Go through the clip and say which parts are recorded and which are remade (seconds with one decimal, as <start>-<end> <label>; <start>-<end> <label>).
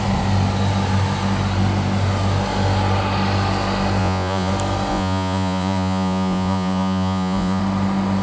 0.0-4.0 recorded; 4.0-4.5 remade; 4.5-4.9 recorded; 4.9-7.6 remade; 7.6-8.2 recorded